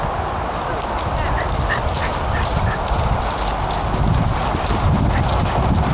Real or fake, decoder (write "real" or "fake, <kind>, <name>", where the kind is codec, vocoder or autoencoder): real